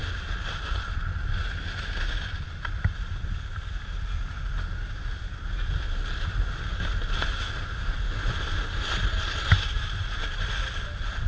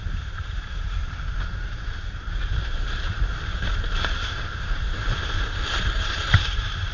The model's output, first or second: second